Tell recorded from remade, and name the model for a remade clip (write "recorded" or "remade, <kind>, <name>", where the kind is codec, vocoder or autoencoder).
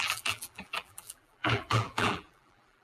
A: remade, vocoder, BigVGAN v2